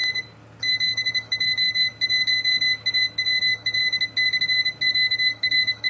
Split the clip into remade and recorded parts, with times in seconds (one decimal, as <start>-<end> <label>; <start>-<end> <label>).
0.0-0.6 recorded; 0.6-1.9 remade; 1.9-3.4 recorded; 3.4-3.8 remade; 3.8-4.9 recorded; 4.9-5.9 remade